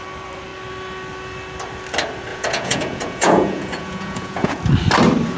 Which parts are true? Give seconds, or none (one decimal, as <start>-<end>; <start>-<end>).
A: 0.0-2.3; 4.6-5.4